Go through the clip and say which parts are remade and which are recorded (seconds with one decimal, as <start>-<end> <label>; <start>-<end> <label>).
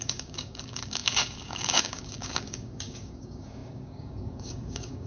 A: 0.0-5.1 remade